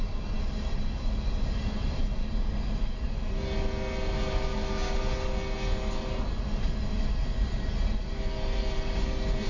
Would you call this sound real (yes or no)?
yes